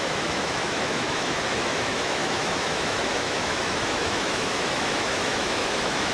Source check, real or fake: fake